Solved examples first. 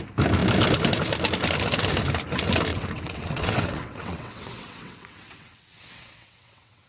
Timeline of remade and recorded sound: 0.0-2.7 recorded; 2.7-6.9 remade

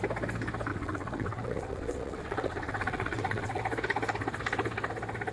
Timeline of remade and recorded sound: 0.0-0.7 recorded; 0.7-3.6 remade; 3.6-5.3 recorded

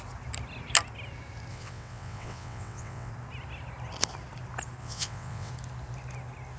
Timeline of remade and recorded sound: 0.0-1.5 recorded; 1.5-3.1 remade; 3.1-4.8 recorded; 4.8-5.5 remade; 5.5-6.6 recorded

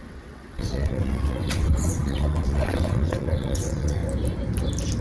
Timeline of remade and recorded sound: 0.0-4.0 remade; 4.0-5.0 recorded

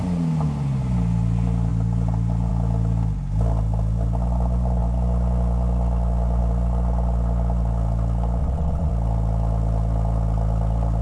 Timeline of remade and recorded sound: 0.0-8.4 recorded; 8.4-8.9 remade; 8.9-11.0 recorded

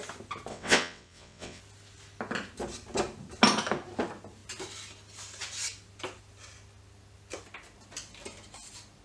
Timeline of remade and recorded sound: 0.0-0.5 recorded; 0.5-1.6 remade; 1.6-9.0 recorded